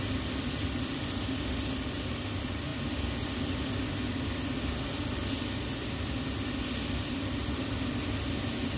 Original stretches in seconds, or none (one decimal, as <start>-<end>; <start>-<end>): 0.0-8.8